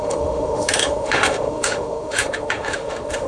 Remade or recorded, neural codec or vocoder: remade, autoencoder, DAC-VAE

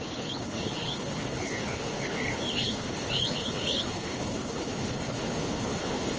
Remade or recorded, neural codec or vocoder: remade, codec, HILCodec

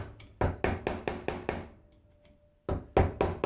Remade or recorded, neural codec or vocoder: recorded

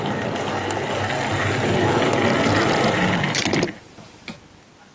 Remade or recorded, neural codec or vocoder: recorded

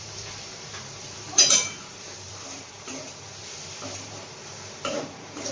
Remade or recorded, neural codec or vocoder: remade, vocoder, BigVGAN v2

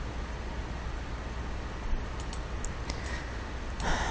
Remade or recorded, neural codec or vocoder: recorded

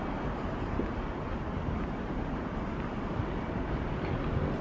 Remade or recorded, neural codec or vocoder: recorded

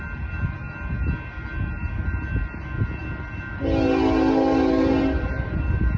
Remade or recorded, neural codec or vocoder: recorded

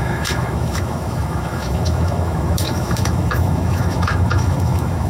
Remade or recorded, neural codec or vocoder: remade, autoencoder, DAC-VAE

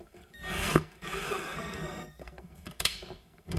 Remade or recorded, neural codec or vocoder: remade, codec, SNAC